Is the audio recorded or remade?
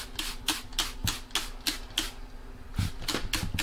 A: recorded